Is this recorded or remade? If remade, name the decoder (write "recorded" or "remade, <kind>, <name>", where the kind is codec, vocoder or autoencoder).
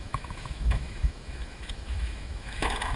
remade, autoencoder, DAC-VAE